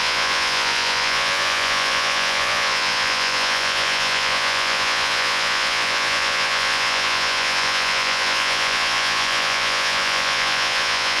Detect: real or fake fake